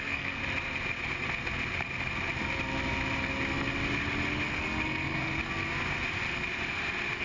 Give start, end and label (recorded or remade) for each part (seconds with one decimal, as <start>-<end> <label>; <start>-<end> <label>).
0.0-0.4 remade; 0.4-4.5 recorded; 4.5-5.4 remade; 5.4-7.2 recorded